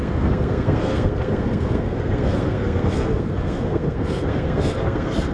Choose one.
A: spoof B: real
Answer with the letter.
A